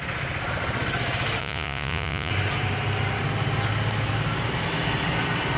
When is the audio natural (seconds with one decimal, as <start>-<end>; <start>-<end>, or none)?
0.0-1.4; 2.3-5.6